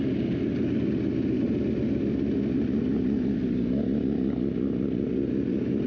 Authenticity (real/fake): real